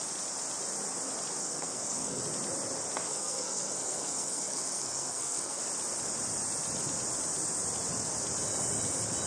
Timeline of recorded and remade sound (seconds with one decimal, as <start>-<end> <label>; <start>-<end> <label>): 0.0-1.4 recorded; 1.4-2.2 remade; 2.2-3.1 recorded; 3.1-5.6 remade; 5.6-9.3 recorded